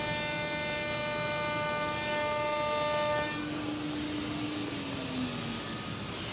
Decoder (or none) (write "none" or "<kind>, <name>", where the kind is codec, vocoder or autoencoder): none